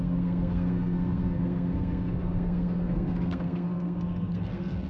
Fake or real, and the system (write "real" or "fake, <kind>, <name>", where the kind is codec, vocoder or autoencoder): fake, codec, SNAC